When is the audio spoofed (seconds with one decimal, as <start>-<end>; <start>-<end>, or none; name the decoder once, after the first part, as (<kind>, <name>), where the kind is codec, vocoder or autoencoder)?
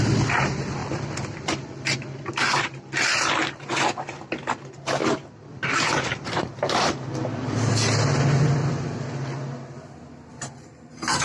0.8-1.7 (vocoder, BigVGAN v2); 5.0-9.9